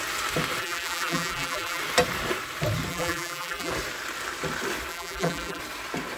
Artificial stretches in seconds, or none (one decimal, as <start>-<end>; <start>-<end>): 0.6-1.8; 2.9-3.7; 4.9-5.6